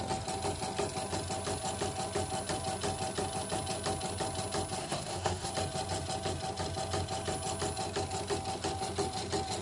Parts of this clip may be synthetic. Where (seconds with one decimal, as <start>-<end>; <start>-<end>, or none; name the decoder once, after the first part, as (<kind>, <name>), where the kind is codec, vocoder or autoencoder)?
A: 4.8-5.5 (codec, SNAC)